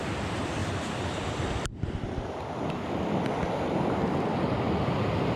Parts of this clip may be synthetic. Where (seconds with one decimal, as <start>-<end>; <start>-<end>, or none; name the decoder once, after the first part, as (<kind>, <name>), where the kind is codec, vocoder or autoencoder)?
0.6-2.6 (vocoder, BigVGAN v2)